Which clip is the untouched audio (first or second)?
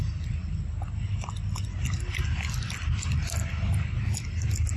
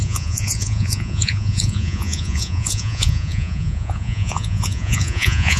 first